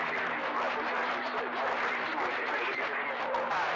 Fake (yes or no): no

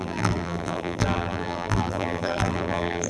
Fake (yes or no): yes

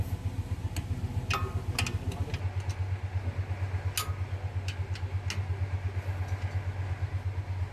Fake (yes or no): no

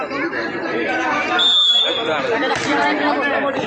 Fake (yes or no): no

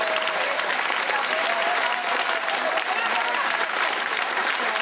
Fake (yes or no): yes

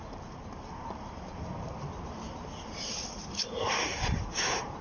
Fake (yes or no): no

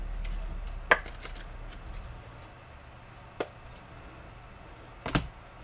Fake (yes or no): no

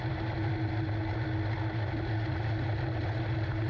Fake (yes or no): no